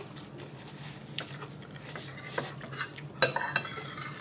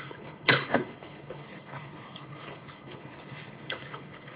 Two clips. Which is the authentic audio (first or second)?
first